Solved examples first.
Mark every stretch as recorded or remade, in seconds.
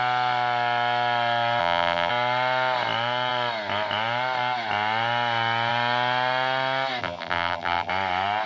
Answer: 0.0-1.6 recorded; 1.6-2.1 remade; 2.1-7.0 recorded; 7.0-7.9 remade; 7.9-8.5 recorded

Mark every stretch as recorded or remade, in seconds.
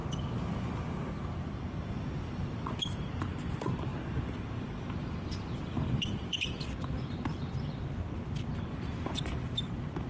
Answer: 0.0-2.3 recorded; 2.3-3.9 remade; 3.9-6.0 recorded; 6.0-10.1 remade